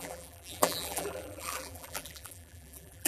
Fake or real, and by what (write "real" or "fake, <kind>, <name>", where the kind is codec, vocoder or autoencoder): fake, vocoder, BigVGAN v2